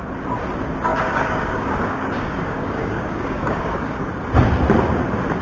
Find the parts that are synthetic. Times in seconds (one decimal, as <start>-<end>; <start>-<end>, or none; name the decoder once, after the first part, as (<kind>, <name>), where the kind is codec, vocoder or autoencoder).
0.9-4.1 (codec, DAC)